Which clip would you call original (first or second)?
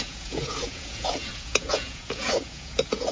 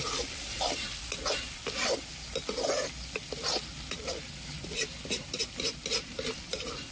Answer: second